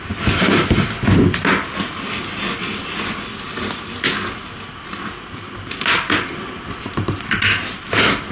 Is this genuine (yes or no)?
yes